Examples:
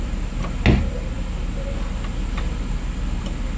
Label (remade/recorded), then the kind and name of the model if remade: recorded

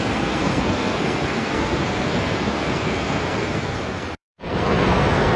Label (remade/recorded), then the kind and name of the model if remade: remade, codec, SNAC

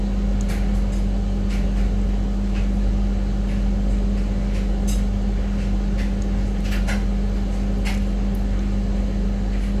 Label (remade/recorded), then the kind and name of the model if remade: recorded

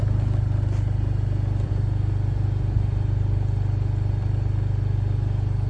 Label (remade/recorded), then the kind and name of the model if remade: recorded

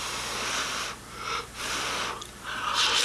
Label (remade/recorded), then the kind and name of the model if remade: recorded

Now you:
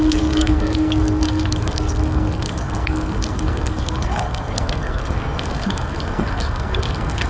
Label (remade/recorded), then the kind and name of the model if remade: remade, codec, SNAC